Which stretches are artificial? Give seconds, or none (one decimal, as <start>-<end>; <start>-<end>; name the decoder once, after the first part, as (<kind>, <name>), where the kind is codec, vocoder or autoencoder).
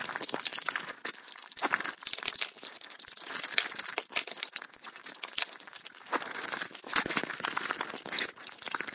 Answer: none